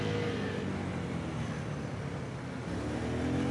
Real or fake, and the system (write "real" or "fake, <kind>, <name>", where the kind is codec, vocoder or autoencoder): real